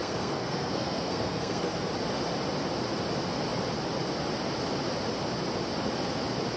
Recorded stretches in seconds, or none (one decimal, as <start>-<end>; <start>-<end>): 1.9-6.6